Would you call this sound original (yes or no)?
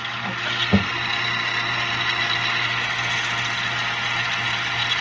yes